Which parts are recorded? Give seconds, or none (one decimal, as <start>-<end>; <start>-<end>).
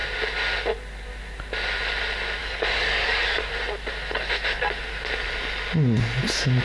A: 0.0-2.4; 3.5-6.6